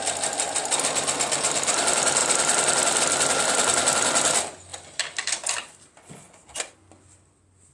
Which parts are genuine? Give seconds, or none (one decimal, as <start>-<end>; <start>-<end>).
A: 0.0-2.2; 3.0-4.7; 6.0-7.7